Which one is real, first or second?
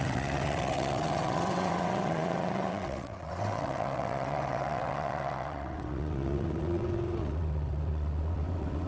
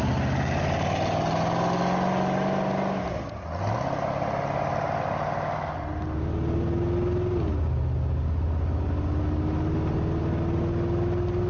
second